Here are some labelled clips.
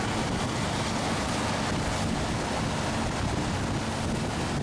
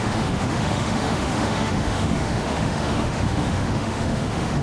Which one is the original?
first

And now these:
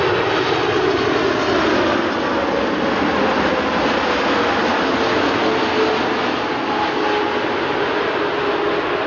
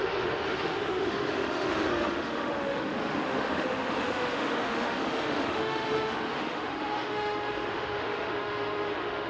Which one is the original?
first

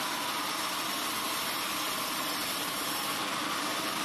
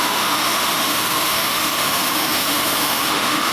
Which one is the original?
first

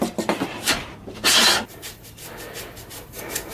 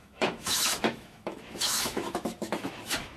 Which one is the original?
first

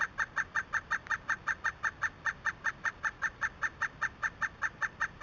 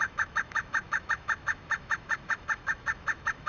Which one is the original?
first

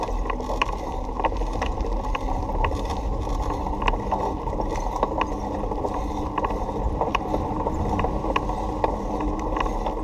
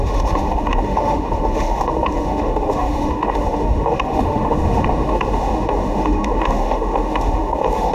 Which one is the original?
first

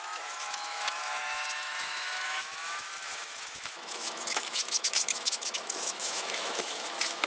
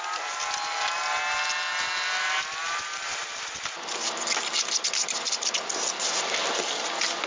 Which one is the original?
second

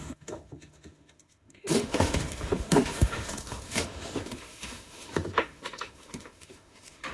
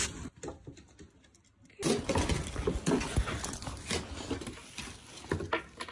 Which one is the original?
second